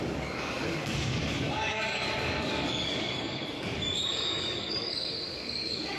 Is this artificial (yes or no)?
yes